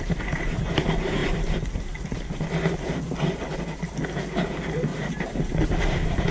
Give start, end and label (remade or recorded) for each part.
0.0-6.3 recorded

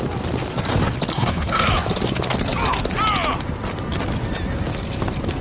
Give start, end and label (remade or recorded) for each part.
0.0-1.1 recorded; 1.1-1.7 remade; 1.7-5.4 recorded

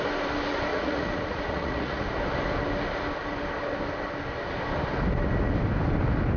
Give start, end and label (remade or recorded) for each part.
0.0-0.7 recorded; 0.7-2.0 remade; 2.0-6.4 recorded

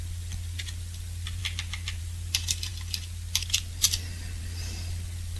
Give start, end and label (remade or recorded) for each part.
0.0-1.4 remade; 1.4-2.0 recorded; 2.0-5.4 remade

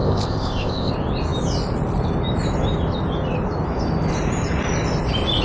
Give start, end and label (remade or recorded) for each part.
0.0-0.9 remade; 0.9-5.4 recorded

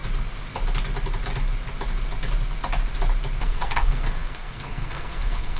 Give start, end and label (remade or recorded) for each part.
0.0-3.4 recorded; 3.4-5.6 remade

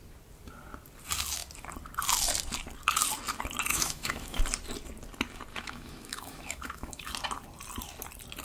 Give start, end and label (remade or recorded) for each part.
0.0-3.7 recorded; 3.7-4.4 remade; 4.4-5.5 recorded; 5.5-7.1 remade; 7.1-8.4 recorded

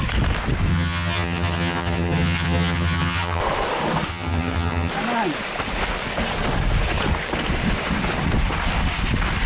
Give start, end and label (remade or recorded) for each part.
0.0-0.7 recorded; 0.7-3.4 remade; 3.4-4.1 recorded; 4.1-4.9 remade; 4.9-9.5 recorded